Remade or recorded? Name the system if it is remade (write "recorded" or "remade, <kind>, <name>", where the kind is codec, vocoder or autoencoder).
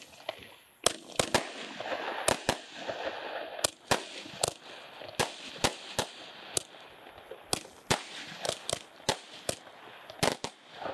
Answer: recorded